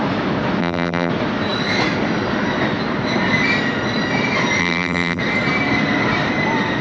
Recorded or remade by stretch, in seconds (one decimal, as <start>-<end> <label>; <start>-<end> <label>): 0.0-0.6 recorded; 0.6-1.1 remade; 1.1-4.6 recorded; 4.6-5.2 remade; 5.2-6.8 recorded